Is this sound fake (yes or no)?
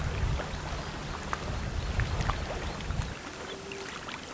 no